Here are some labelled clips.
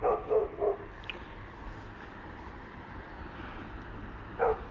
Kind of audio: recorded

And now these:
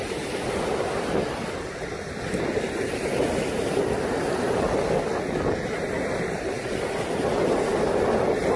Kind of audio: recorded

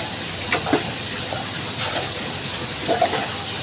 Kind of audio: recorded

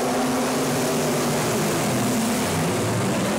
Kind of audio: recorded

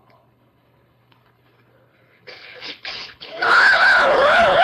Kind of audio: remade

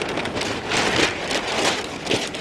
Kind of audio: recorded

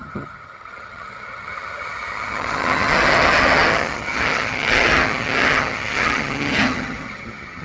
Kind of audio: remade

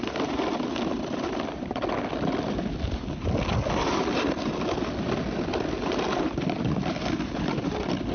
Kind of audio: recorded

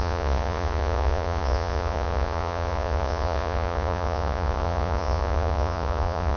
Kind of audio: remade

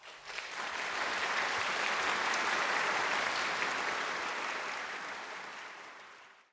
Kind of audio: remade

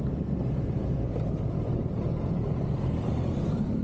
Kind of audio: recorded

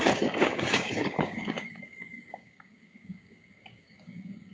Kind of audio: remade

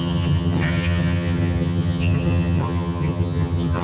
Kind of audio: remade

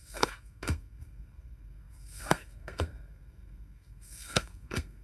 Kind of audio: remade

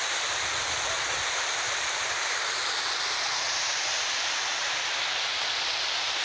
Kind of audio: remade